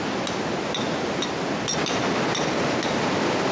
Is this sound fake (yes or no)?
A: no